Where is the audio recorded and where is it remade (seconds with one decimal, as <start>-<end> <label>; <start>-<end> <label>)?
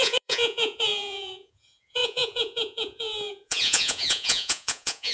0.0-5.1 remade